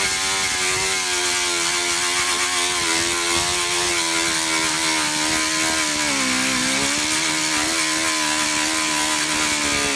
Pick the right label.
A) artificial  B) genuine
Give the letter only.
B